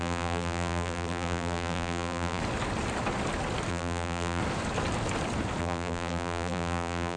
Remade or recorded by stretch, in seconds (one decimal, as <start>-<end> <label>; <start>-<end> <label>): 0.0-2.4 remade; 2.4-3.7 recorded; 3.7-4.4 remade; 4.4-5.6 recorded; 5.6-7.2 remade